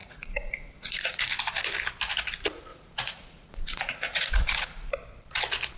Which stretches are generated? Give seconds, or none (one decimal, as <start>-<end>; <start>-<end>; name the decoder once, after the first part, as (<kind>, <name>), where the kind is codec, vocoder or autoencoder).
0.0-1.2 (vocoder, Vocos); 2.7-4.9